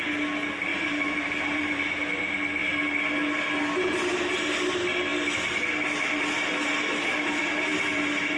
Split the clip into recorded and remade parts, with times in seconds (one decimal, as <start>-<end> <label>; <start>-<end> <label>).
0.0-0.7 recorded; 0.7-1.8 remade; 1.8-8.4 recorded